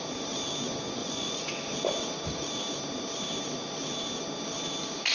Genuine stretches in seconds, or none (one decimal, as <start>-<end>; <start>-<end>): 0.0-1.0; 1.5-5.1